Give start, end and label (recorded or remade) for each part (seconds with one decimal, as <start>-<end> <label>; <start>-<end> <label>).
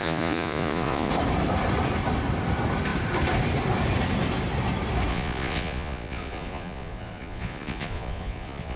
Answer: 0.0-1.1 remade; 1.1-5.1 recorded; 5.1-8.8 remade